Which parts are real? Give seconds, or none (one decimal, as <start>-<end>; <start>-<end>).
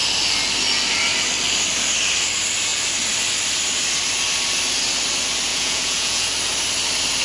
0.0-5.5; 6.3-7.2